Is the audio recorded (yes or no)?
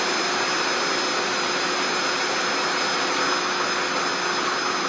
yes